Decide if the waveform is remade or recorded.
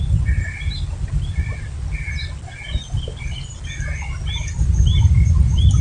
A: recorded